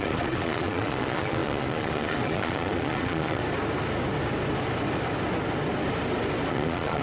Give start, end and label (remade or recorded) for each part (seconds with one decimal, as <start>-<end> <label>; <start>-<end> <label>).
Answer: 0.0-3.4 remade; 3.4-6.5 recorded; 6.5-7.0 remade